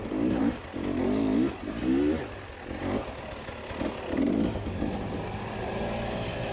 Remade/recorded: recorded